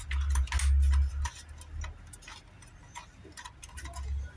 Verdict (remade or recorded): recorded